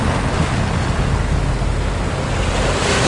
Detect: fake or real real